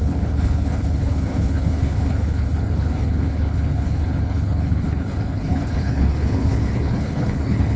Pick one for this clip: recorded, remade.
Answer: remade